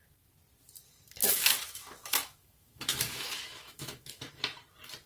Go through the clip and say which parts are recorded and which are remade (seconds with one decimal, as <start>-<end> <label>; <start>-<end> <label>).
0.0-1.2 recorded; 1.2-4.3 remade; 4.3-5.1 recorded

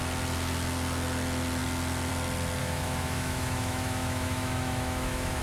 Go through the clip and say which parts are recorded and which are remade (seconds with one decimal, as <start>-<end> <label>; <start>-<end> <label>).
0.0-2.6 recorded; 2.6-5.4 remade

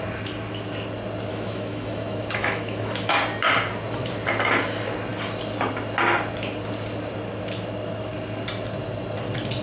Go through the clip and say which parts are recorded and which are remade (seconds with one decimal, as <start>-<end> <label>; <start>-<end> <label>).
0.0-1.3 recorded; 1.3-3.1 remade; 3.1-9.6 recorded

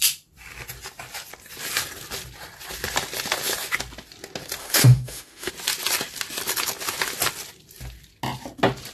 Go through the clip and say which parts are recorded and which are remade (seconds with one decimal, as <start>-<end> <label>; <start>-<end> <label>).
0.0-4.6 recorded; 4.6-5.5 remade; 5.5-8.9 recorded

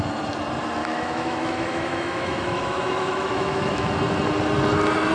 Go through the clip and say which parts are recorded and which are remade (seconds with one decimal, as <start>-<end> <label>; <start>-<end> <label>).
0.0-0.8 recorded; 0.8-3.9 remade; 3.9-5.1 recorded